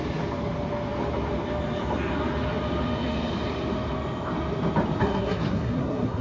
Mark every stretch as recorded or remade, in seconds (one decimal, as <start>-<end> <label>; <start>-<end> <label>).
0.0-5.0 recorded; 5.0-6.2 remade